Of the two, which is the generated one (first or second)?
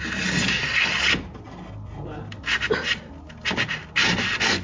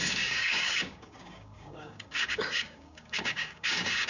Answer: second